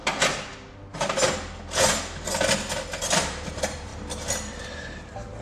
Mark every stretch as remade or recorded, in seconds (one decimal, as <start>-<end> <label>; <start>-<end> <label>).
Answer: 0.0-3.0 recorded; 3.0-3.9 remade; 3.9-4.5 recorded; 4.5-5.4 remade